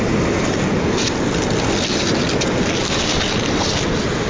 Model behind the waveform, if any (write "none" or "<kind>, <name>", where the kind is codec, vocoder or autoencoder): none